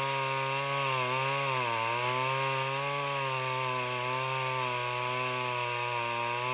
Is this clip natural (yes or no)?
yes